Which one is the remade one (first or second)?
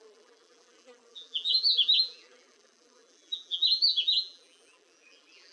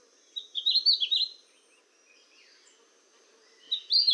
first